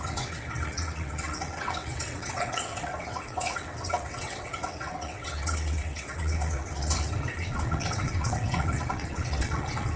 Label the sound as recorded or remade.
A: remade